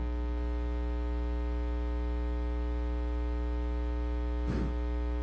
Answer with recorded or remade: recorded